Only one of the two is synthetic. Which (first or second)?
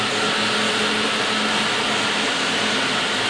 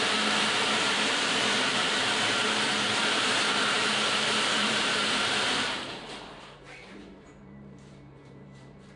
second